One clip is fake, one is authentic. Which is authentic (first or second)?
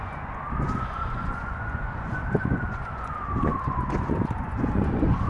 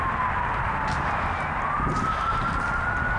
second